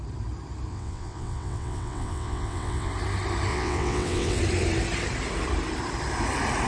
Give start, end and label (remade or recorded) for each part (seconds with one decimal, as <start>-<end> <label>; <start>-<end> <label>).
0.0-0.7 recorded; 0.7-2.9 remade; 2.9-3.5 recorded; 3.5-4.4 remade; 4.4-6.7 recorded